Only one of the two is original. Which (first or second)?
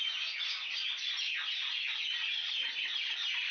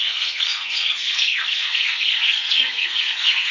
first